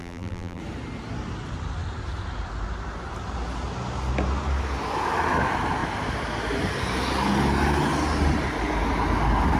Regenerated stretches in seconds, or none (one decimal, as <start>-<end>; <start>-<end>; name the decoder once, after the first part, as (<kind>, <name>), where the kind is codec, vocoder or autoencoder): 0.0-0.6 (vocoder, BigVGAN v2)